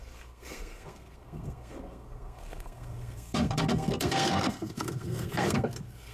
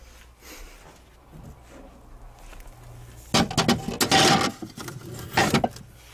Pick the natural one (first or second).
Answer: second